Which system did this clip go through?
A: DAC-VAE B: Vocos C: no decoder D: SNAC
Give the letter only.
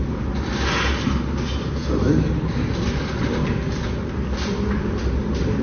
C